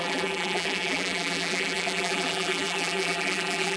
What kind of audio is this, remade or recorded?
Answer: remade